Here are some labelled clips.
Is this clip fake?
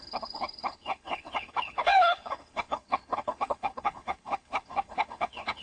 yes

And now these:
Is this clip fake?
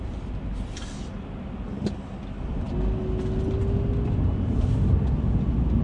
no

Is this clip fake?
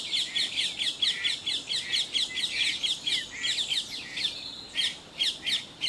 no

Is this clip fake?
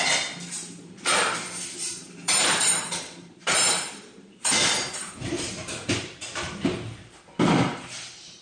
yes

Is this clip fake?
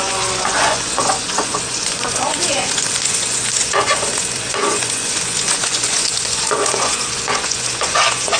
yes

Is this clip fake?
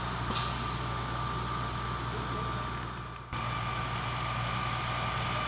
no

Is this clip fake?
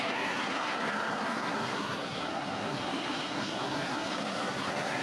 yes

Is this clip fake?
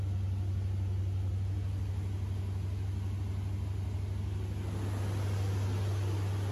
no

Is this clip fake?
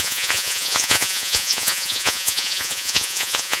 yes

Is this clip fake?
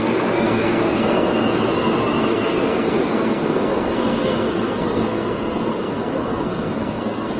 yes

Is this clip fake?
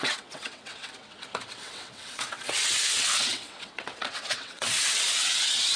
yes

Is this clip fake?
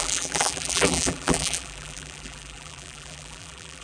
yes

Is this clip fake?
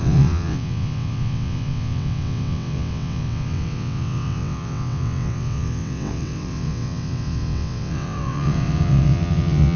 yes